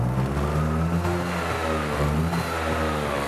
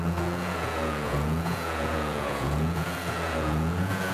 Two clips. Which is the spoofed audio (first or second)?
second